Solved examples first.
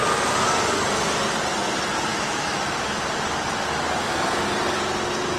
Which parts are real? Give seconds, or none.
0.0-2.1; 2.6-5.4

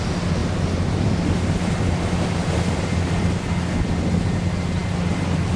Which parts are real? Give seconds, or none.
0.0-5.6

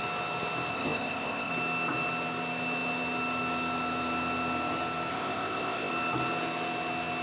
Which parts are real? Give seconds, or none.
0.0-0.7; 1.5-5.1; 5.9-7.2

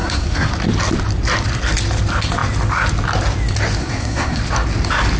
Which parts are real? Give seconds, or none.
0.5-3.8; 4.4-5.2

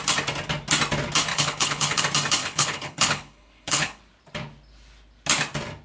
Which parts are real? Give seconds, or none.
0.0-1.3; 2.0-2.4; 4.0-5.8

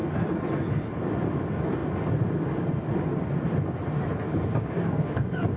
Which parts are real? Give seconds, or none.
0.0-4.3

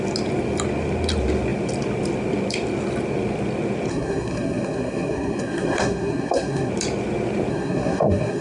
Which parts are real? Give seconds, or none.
0.0-3.9; 6.7-7.5